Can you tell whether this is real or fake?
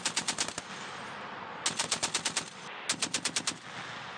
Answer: real